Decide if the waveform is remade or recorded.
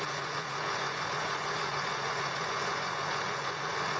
remade